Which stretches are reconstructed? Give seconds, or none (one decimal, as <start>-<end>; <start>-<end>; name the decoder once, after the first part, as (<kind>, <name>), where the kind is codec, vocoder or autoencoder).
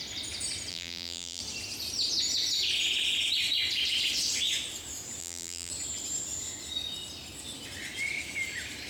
0.7-1.4 (vocoder, BigVGAN v2); 5.2-5.7